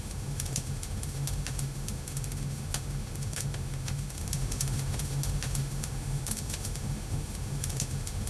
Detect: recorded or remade remade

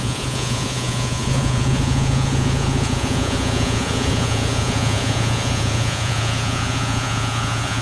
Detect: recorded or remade remade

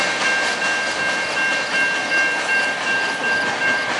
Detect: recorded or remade recorded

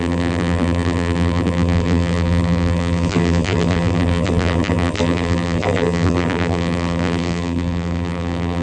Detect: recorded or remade remade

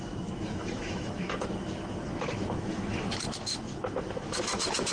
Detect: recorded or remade remade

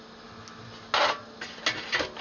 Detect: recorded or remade recorded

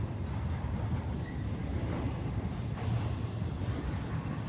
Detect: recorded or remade remade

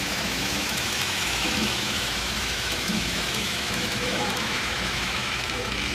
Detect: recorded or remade remade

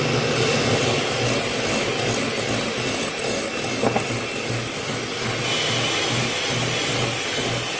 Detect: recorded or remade recorded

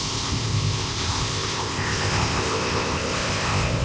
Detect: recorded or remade remade